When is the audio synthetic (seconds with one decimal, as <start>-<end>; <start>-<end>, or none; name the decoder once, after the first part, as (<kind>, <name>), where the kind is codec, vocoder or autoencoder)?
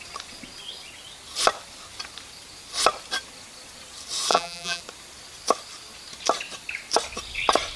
4.3-4.8 (vocoder, BigVGAN v2)